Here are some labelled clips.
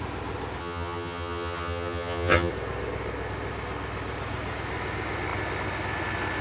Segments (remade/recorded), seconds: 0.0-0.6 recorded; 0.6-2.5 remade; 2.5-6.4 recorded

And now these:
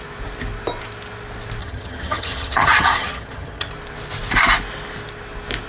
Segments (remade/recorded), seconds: 0.0-1.6 recorded; 1.6-3.7 remade; 3.7-5.7 recorded

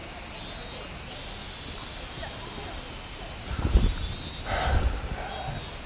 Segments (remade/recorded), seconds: 0.0-5.9 recorded

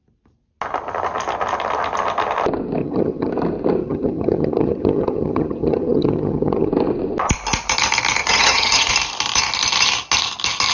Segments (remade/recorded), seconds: 0.0-2.8 recorded; 2.8-3.3 remade; 3.3-3.8 recorded; 3.8-6.7 remade; 6.7-8.2 recorded; 8.2-8.9 remade; 8.9-10.7 recorded